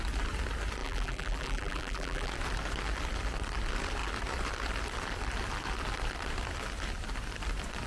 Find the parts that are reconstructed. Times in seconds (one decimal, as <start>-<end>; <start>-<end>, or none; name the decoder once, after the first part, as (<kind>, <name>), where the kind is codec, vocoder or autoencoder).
0.8-2.3 (vocoder, BigVGAN v2)